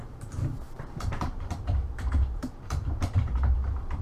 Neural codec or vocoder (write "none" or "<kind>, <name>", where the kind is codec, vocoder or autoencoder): vocoder, BigVGAN v2